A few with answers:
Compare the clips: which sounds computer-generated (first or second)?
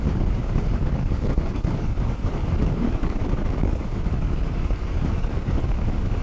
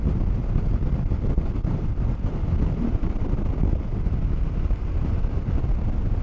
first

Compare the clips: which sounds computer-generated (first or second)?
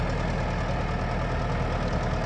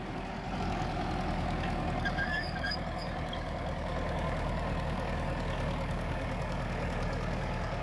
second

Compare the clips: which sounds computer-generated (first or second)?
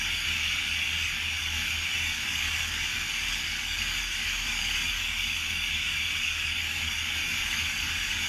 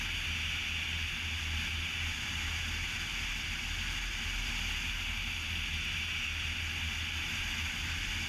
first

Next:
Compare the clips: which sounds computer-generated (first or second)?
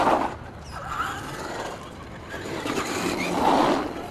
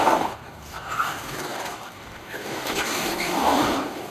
second